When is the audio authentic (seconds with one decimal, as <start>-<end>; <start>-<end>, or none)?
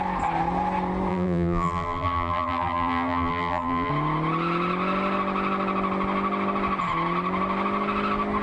0.0-1.1; 3.9-8.4